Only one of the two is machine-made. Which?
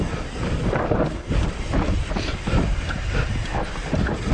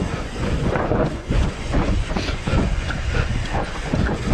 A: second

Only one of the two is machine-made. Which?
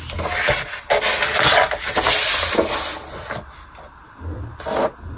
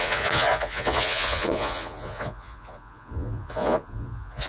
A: second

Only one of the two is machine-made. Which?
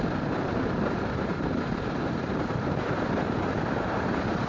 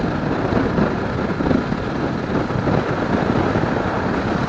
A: first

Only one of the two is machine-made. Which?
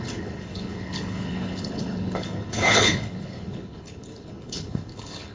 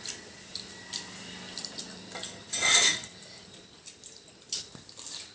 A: first